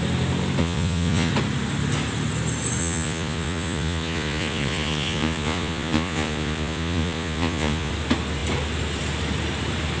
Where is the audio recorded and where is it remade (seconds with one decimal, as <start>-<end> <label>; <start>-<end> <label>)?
0.0-0.6 recorded; 0.6-1.3 remade; 1.3-2.8 recorded; 2.8-7.9 remade; 7.9-10.0 recorded